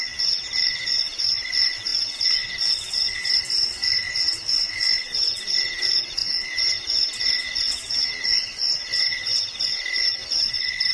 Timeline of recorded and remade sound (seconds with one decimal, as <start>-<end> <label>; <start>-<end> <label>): 0.0-10.9 recorded